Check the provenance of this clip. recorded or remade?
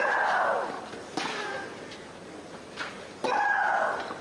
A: recorded